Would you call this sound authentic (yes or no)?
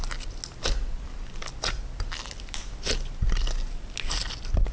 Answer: yes